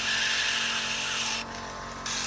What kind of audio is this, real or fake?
real